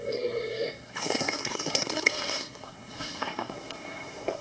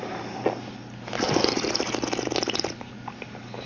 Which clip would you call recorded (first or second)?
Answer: second